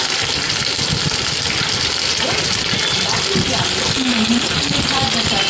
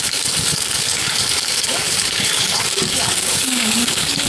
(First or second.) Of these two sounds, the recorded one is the first